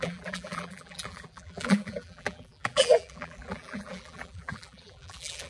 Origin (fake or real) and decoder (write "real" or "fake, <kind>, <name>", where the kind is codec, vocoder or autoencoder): fake, vocoder, BigVGAN v2